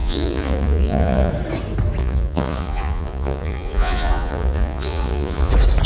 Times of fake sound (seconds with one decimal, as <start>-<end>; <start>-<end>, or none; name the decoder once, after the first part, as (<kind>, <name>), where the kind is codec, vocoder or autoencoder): 0.0-1.3 (vocoder, Vocos); 2.0-5.5